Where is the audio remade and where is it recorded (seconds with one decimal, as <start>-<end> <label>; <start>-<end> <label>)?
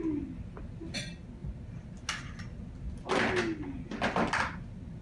0.0-5.0 recorded